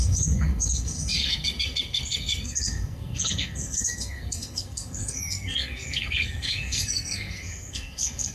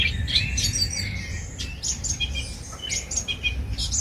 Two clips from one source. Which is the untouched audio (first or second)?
second